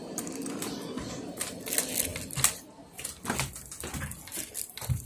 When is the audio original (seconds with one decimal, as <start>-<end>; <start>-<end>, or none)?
1.5-4.3